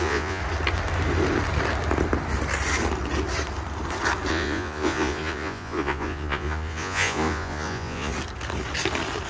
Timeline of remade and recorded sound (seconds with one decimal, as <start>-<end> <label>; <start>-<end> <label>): 0.0-0.4 remade; 0.4-4.3 recorded; 4.3-8.1 remade; 8.1-9.3 recorded

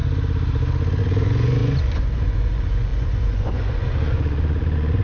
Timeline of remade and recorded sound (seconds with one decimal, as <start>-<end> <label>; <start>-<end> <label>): 0.0-1.0 recorded; 1.0-5.0 remade

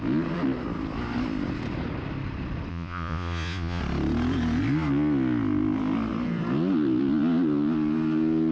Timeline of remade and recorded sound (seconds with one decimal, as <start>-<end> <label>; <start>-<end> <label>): 0.0-2.7 recorded; 2.7-3.8 remade; 3.8-8.5 recorded